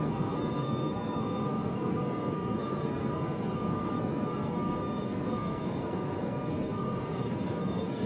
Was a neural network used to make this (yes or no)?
yes